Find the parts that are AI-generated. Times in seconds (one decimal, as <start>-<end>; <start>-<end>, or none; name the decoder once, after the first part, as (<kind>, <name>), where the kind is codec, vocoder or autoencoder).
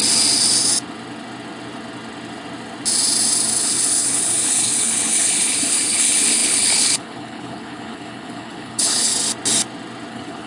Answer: 3.6-9.1 (codec, HILCodec); 10.1-10.5